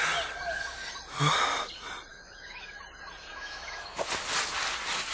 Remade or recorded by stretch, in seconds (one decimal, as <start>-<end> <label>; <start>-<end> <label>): 0.0-2.1 recorded; 2.1-2.8 remade; 2.8-3.3 recorded; 3.3-4.0 remade; 4.0-5.1 recorded